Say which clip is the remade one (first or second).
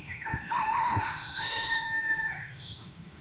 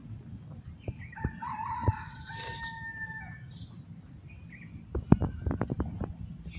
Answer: first